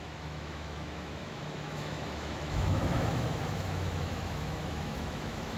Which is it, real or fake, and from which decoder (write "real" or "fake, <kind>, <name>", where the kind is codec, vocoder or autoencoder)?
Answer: fake, autoencoder, DAC-VAE